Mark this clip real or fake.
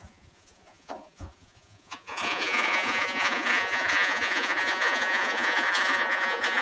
fake